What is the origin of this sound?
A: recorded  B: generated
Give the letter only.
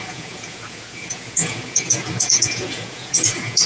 B